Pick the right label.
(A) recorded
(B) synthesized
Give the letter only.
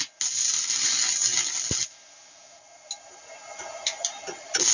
A